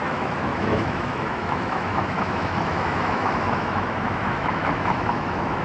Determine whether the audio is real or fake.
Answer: fake